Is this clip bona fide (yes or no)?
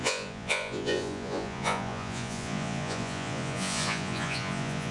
no